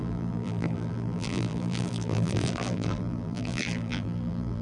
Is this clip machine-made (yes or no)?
yes